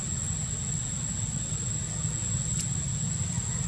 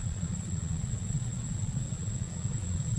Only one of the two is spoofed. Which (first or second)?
second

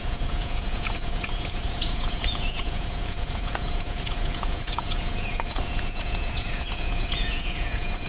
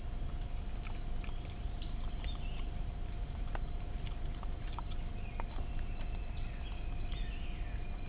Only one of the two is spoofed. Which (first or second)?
first